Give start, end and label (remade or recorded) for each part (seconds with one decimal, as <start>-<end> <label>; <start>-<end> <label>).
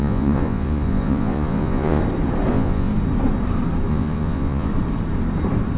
0.0-2.0 remade; 2.0-2.5 recorded; 2.5-2.9 remade; 2.9-3.9 recorded; 3.9-4.7 remade; 4.7-5.8 recorded